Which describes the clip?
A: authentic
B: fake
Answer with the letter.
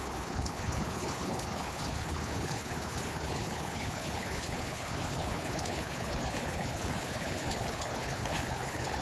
B